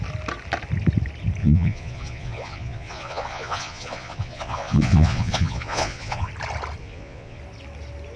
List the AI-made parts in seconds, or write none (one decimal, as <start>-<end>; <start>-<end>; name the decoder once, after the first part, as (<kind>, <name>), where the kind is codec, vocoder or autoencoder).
1.4-6.3 (vocoder, Vocos); 6.8-7.4